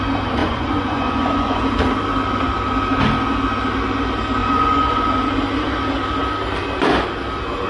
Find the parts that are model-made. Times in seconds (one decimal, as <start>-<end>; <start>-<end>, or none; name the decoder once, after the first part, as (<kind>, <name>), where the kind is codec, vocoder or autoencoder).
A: 0.4-1.6 (vocoder, Vocos); 4.4-5.0

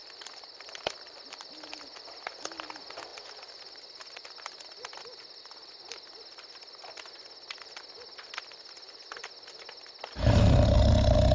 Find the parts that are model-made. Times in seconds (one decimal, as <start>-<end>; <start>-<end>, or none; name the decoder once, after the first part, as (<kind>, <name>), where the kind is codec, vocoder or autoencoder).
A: none

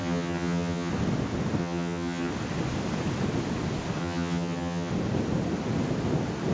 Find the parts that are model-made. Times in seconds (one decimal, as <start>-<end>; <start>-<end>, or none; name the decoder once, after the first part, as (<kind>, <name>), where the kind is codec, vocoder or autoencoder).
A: 0.0-0.9 (vocoder, HiFi-GAN); 1.6-2.3; 4.0-4.9

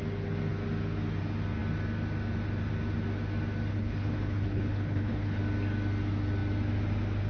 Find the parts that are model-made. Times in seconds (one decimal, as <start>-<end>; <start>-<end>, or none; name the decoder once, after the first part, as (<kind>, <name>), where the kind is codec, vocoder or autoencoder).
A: 3.7-5.4 (codec, HILCodec)

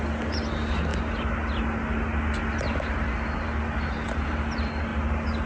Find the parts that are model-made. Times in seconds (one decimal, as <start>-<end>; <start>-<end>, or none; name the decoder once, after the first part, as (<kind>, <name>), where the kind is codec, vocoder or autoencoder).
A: none

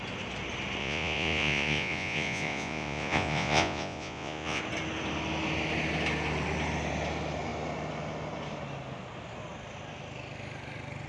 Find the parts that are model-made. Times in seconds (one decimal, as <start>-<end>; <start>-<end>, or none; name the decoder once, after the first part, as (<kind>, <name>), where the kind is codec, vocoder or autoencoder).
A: 0.8-4.6 (vocoder, Vocos)